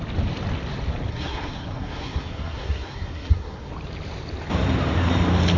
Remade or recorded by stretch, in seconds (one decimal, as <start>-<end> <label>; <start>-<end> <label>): 0.0-1.1 recorded; 1.1-3.7 remade; 3.7-5.6 recorded